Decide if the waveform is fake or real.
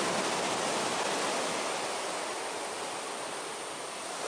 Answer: real